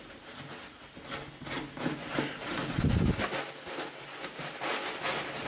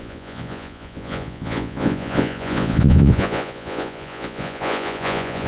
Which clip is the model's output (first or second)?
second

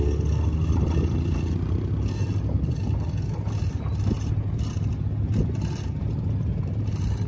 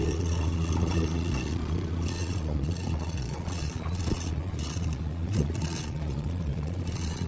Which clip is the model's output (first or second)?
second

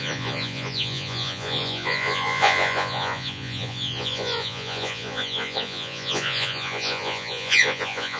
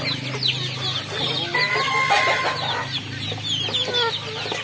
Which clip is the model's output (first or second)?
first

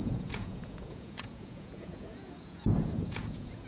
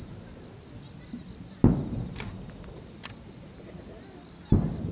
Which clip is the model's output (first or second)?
first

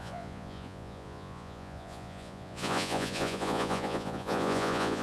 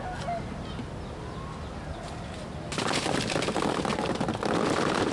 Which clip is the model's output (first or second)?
first